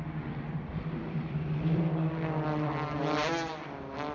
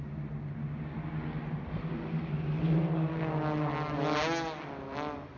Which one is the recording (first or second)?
second